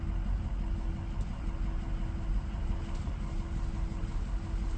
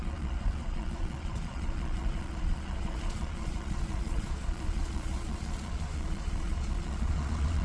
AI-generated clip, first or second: second